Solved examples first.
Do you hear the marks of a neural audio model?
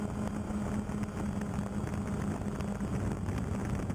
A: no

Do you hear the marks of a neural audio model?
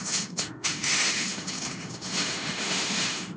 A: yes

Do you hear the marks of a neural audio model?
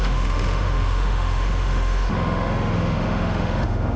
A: yes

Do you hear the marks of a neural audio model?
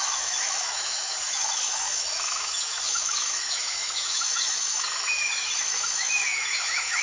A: yes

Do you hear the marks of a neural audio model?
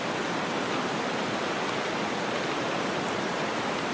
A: no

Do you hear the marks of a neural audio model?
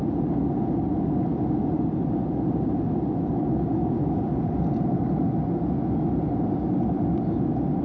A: no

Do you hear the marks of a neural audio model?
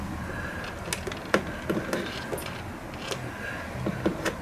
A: no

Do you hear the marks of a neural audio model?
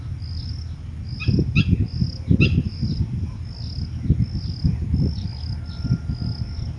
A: no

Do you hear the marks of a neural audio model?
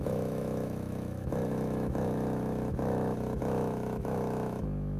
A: yes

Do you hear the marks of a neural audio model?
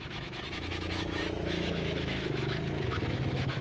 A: yes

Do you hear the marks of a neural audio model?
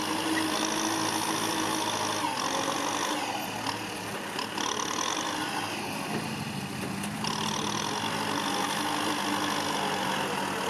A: no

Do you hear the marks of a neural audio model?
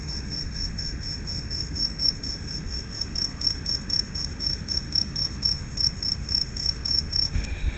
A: yes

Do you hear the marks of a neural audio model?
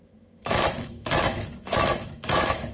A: yes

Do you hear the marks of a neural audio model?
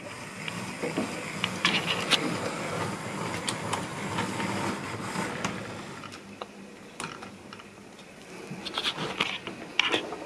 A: no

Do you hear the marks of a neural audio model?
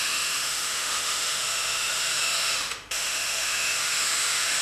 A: yes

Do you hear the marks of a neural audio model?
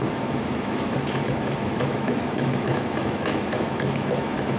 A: yes